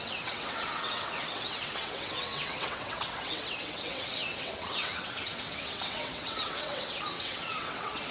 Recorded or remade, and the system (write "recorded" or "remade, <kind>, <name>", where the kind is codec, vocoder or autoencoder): remade, vocoder, WaveNeXt